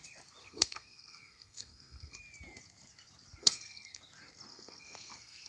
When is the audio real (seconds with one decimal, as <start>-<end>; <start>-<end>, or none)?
0.0-0.4; 2.2-3.4; 4.0-4.5